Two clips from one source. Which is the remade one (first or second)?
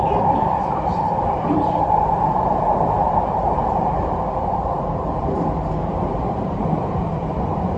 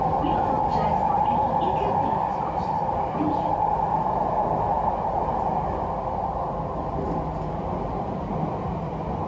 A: first